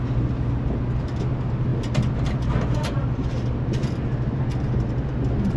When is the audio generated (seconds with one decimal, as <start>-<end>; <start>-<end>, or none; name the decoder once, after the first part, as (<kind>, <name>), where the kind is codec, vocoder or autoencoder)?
none

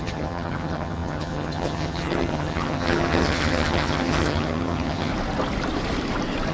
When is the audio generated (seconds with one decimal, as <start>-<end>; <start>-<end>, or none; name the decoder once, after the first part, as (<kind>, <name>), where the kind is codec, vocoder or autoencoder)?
0.0-5.1 (vocoder, HiFi-GAN)